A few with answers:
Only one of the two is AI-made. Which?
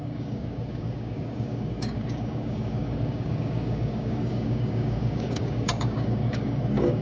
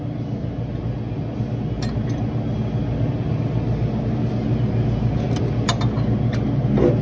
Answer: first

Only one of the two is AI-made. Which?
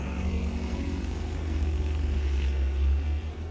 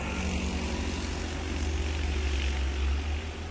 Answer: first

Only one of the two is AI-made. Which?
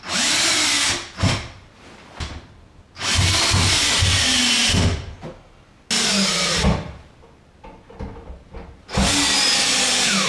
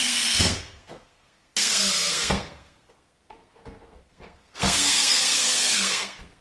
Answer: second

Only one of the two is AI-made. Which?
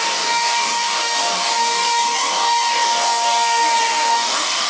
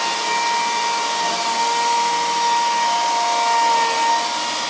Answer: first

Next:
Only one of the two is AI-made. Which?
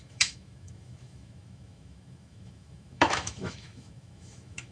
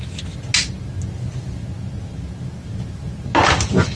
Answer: first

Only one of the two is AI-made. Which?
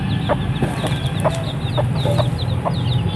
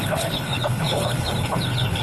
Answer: second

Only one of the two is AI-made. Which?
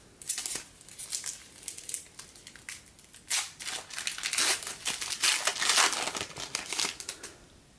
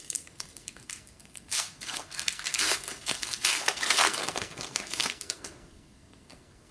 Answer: second